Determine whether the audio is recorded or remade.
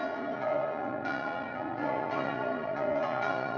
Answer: remade